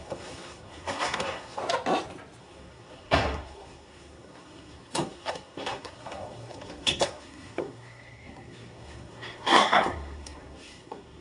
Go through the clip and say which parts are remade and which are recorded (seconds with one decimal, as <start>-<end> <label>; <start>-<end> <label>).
0.0-1.6 remade; 1.6-2.4 recorded; 2.4-11.2 remade